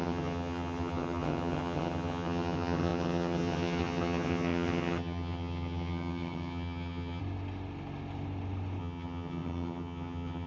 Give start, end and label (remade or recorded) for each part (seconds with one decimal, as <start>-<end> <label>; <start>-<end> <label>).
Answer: 0.0-7.2 remade; 7.2-8.8 recorded; 8.8-10.5 remade